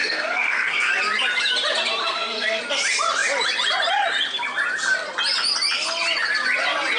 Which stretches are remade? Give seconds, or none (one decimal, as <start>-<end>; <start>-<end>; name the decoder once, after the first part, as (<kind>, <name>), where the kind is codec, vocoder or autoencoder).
0.0-0.9 (codec, SNAC); 2.0-2.6